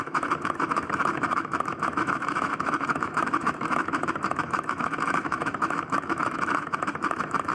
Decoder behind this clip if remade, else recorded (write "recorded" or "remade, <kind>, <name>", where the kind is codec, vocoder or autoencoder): remade, autoencoder, DAC-VAE